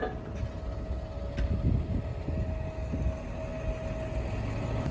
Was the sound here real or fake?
real